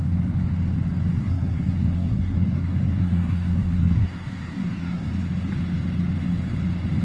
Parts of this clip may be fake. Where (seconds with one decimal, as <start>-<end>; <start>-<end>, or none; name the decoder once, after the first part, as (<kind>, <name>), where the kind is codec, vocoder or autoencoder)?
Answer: 1.2-5.1 (codec, SNAC)